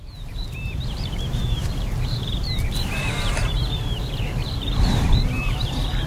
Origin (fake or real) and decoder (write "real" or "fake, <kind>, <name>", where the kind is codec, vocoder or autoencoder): fake, vocoder, BigVGAN v2